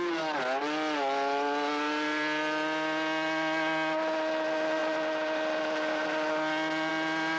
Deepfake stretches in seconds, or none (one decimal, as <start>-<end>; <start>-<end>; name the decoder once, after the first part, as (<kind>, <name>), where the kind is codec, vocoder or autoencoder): none